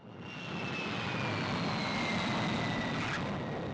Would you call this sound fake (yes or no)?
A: no